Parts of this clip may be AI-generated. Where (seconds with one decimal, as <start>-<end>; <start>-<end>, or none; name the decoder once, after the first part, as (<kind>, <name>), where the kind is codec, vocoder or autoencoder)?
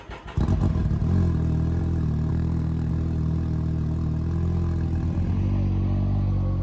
2.3-2.9 (codec, SNAC)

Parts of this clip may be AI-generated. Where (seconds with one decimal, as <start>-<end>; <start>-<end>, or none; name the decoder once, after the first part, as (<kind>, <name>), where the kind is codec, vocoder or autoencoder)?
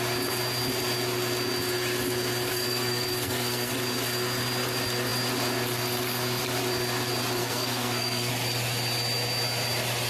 2.5-3.7 (codec, SNAC); 7.4-8.3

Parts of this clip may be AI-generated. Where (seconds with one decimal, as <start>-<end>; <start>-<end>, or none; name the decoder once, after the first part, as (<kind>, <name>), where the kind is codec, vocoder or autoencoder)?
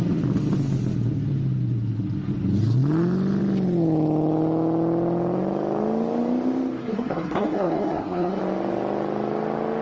6.8-8.4 (codec, SNAC)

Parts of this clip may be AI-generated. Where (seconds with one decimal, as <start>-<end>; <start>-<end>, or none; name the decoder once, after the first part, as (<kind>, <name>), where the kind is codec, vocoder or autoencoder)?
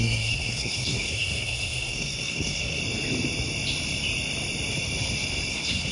0.0-2.8 (codec, SNAC); 5.5-5.9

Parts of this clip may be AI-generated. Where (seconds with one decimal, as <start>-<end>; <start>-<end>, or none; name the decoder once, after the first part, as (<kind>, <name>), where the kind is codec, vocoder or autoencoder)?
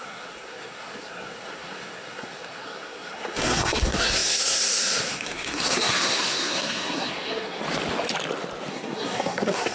0.0-7.6 (codec, SNAC); 8.7-9.7